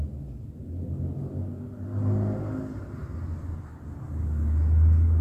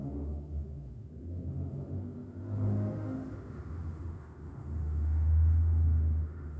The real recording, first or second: first